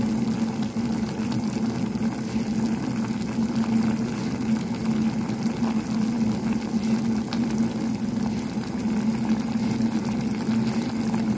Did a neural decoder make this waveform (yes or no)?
no